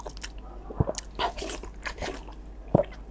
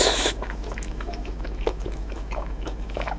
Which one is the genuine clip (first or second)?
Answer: first